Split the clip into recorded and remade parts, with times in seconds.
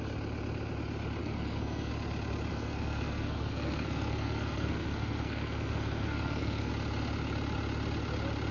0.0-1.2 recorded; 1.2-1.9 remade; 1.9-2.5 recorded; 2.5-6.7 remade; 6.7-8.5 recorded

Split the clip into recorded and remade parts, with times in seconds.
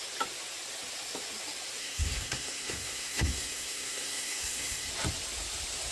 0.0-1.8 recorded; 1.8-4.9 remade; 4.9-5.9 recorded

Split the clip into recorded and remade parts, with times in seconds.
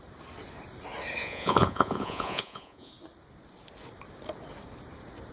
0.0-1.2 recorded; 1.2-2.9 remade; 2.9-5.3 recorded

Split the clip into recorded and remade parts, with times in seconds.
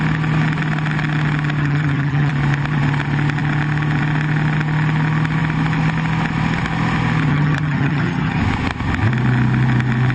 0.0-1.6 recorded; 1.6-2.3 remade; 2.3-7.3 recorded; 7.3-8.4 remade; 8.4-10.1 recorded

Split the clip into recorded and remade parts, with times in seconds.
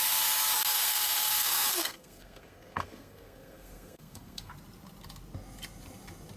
0.0-0.7 recorded; 0.7-4.5 remade; 4.5-6.4 recorded